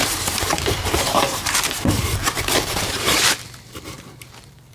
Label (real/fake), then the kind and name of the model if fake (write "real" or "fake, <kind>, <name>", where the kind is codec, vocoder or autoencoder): fake, vocoder, BigVGAN v2